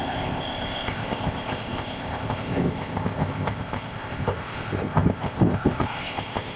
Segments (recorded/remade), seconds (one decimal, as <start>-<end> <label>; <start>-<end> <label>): 0.0-6.6 remade